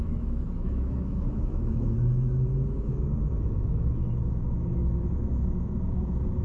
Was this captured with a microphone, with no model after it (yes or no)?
no